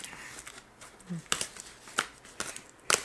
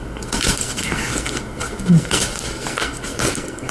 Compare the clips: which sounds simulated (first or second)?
second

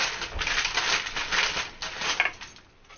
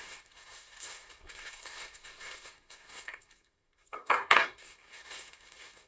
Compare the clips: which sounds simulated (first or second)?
second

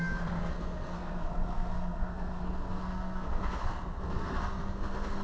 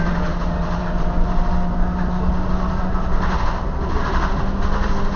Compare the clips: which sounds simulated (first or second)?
first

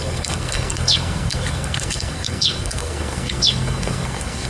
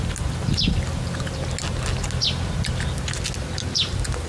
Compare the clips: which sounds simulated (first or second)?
first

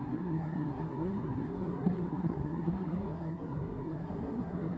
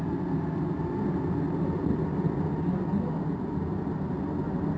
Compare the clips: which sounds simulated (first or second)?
first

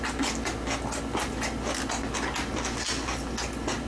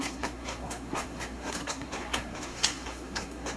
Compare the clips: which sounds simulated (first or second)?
second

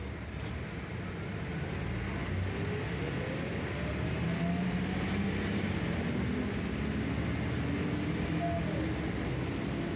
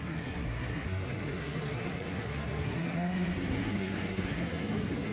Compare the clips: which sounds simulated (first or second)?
second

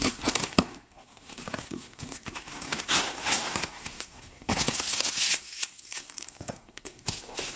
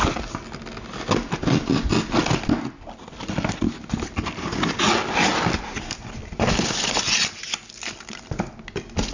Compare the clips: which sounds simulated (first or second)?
first